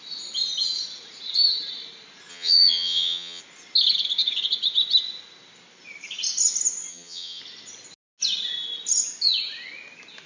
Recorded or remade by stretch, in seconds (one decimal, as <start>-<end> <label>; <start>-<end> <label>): 0.0-2.3 recorded; 2.3-3.4 remade; 3.4-6.9 recorded; 6.9-7.4 remade; 7.4-10.3 recorded